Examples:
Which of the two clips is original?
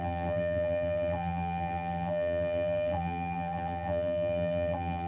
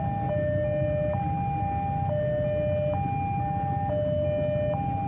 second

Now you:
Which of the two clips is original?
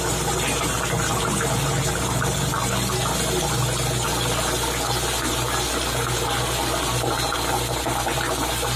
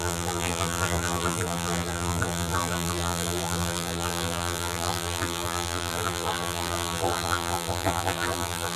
first